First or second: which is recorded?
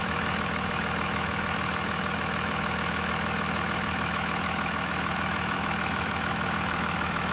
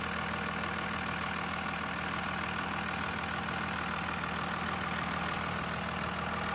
second